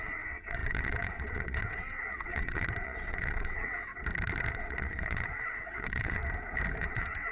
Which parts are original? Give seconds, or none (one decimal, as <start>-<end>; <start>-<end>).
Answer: 3.9-4.5; 6.2-6.8